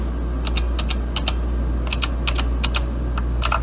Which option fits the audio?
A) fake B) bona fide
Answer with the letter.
B